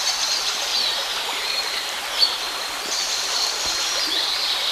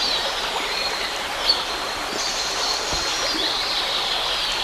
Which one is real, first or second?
second